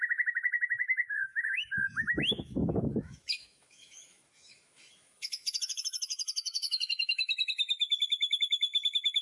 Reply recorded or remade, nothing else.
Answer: remade